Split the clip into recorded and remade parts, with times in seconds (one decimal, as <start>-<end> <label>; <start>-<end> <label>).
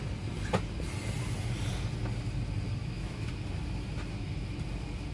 0.0-2.8 recorded; 2.8-3.3 remade; 3.3-5.1 recorded